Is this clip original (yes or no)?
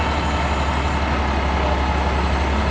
yes